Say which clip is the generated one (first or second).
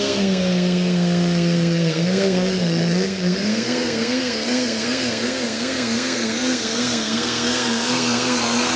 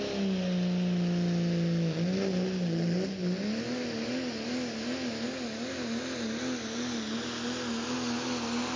first